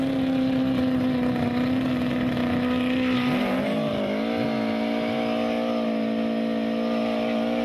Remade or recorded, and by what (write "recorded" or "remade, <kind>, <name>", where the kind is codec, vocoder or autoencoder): recorded